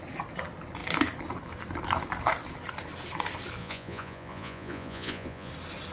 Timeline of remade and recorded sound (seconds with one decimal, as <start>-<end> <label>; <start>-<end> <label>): 0.0-3.6 recorded; 3.6-5.5 remade; 5.5-5.9 recorded